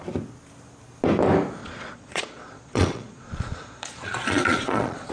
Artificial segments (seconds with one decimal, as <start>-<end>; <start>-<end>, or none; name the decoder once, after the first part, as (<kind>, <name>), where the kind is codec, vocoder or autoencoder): 1.6-5.1 (vocoder, Vocos)